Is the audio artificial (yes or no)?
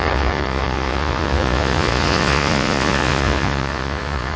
yes